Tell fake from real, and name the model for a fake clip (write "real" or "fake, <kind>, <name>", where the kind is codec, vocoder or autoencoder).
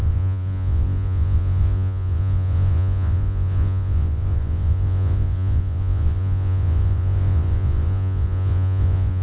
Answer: fake, vocoder, Vocos